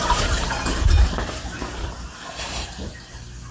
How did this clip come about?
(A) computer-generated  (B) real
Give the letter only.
B